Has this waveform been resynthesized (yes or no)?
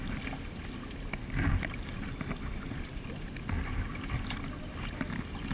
no